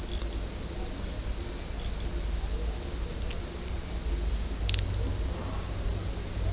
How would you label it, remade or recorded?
recorded